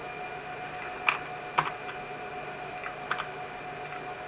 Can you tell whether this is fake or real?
real